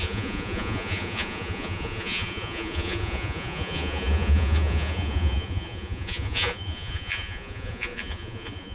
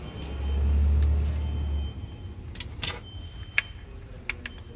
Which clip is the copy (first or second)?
first